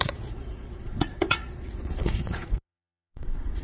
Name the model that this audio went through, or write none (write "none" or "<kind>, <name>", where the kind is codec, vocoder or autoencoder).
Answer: vocoder, Vocos